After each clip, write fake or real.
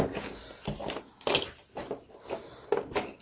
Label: real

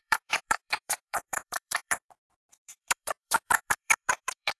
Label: fake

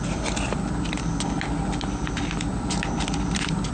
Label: real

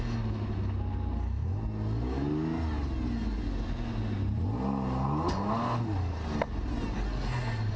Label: real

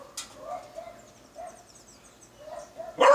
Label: real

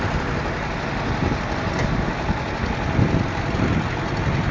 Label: real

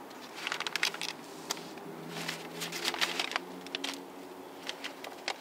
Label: real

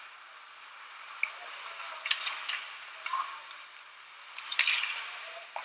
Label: real